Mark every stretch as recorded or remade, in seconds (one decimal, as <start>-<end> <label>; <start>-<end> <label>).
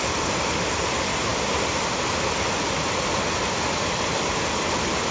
0.0-5.1 recorded